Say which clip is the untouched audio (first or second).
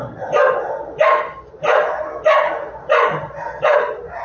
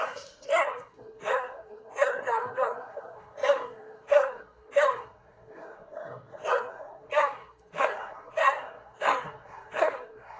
first